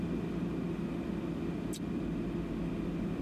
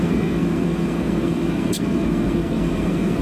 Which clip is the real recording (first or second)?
first